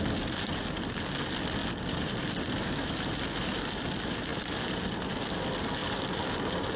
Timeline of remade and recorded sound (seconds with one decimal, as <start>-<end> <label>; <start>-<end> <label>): 0.0-6.8 recorded